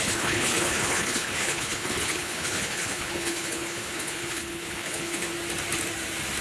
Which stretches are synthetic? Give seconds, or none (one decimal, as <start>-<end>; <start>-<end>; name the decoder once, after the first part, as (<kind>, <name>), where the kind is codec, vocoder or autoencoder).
0.0-5.3 (codec, HILCodec)